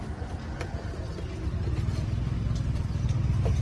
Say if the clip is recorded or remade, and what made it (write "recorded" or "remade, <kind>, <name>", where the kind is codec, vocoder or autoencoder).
recorded